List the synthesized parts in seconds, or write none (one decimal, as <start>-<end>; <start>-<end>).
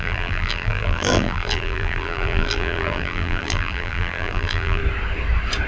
0.0-4.8